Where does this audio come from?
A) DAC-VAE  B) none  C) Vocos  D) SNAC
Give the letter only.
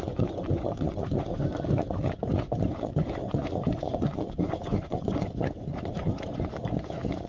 C